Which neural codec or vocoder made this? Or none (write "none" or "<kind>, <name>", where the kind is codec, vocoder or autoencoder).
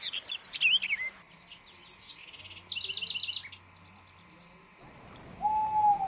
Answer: none